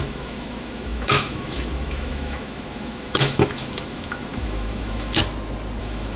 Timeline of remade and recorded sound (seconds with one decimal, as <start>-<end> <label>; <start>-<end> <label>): 0.0-5.2 remade; 5.2-5.8 recorded; 5.8-6.2 remade